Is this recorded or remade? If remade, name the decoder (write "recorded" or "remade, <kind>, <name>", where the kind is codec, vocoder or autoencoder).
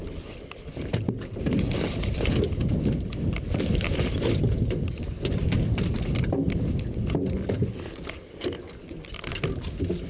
recorded